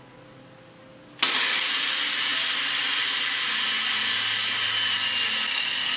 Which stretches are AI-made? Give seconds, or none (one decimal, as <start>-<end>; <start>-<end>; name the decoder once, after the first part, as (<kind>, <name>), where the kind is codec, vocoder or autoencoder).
2.3-3.0 (vocoder, BigVGAN v2)